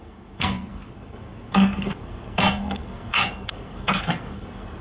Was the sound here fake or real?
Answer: fake